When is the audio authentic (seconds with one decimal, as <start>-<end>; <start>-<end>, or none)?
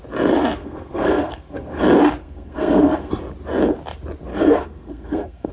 0.0-0.6; 1.8-2.2; 3.1-4.3